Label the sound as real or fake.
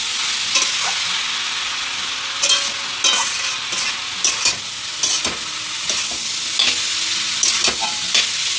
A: real